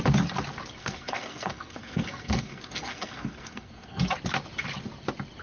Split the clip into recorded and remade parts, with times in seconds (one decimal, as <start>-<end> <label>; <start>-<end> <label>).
0.0-0.8 recorded; 0.8-4.0 remade; 4.0-5.4 recorded